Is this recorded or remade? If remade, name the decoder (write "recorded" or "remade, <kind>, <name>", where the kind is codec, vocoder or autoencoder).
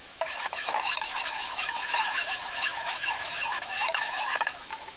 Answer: remade, autoencoder, DAC-VAE